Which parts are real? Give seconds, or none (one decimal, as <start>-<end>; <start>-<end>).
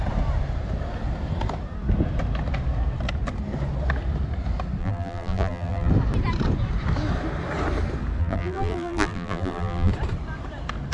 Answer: 0.0-4.8; 5.9-8.2; 9.9-10.9